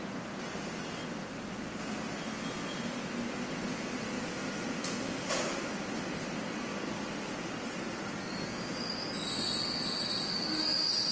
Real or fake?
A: real